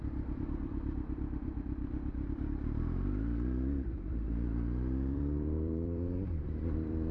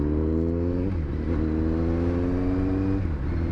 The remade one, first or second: first